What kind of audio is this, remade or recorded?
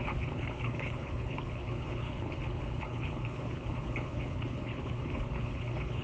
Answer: remade